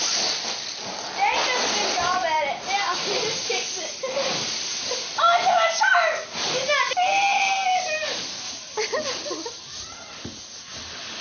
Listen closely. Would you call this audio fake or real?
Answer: real